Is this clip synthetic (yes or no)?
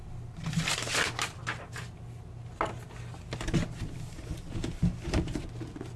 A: no